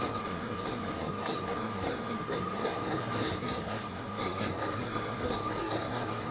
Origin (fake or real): fake